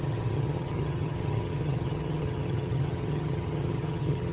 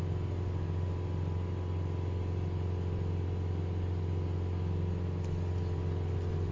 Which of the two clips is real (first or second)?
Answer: second